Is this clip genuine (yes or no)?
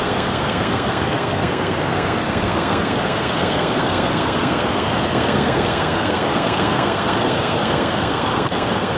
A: no